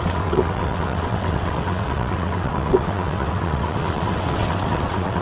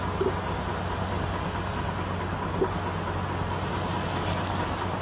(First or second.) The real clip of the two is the second